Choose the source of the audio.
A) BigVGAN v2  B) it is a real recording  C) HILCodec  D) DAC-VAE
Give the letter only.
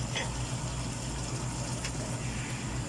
B